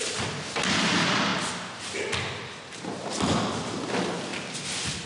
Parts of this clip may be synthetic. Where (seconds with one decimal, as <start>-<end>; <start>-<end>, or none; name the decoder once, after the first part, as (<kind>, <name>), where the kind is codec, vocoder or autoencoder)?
none